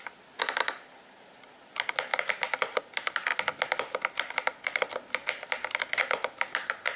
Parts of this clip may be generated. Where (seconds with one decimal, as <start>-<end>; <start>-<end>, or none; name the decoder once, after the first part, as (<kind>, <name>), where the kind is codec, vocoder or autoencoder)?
none

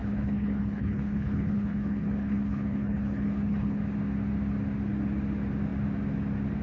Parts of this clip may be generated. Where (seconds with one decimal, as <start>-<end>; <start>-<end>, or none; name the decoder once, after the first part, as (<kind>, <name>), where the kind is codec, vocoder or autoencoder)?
0.0-3.8 (codec, HILCodec)

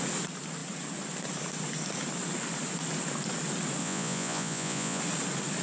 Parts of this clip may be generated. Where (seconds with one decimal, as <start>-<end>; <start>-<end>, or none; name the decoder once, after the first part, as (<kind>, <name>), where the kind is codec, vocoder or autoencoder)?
3.8-5.0 (vocoder, Vocos)

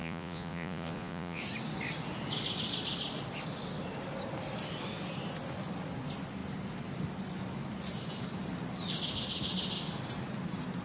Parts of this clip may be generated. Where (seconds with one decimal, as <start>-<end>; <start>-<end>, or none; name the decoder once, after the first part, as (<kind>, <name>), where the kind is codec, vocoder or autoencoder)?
0.0-1.4 (vocoder, Vocos)

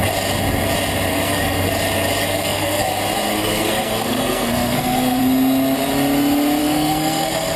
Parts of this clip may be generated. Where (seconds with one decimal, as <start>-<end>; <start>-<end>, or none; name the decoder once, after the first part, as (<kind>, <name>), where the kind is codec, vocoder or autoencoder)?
1.1-1.7 (codec, SNAC); 2.2-2.9; 3.3-5.2; 6.6-7.6

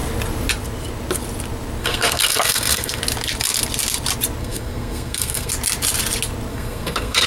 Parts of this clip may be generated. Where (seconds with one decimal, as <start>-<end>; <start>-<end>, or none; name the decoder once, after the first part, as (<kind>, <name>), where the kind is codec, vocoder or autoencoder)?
1.8-3.0 (codec, SNAC); 4.4-5.5; 6.5-7.3

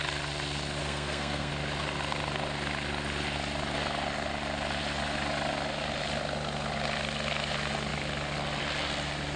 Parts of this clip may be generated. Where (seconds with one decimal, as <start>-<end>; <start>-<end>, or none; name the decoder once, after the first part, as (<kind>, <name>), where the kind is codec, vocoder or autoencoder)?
0.8-1.5 (codec, SNAC)

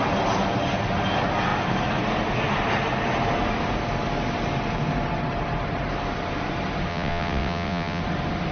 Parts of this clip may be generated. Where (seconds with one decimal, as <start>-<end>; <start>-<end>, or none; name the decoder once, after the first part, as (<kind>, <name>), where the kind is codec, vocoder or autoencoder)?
6.9-8.0 (vocoder, WaveNeXt)